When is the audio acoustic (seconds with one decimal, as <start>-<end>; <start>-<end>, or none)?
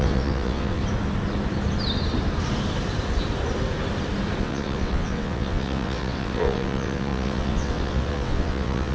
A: 0.8-4.4